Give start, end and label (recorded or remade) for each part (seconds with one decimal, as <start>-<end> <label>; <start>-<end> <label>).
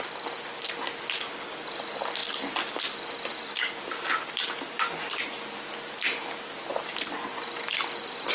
0.0-8.3 recorded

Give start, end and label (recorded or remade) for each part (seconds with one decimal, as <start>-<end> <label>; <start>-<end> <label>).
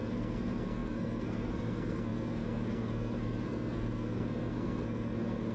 0.0-5.5 remade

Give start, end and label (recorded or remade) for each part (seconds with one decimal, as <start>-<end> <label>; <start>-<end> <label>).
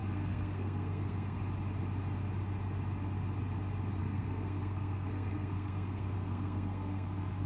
0.0-1.4 remade; 1.4-4.0 recorded; 4.0-7.5 remade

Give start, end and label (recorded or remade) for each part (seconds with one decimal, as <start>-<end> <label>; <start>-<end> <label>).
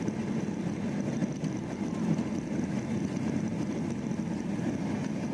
0.0-5.3 recorded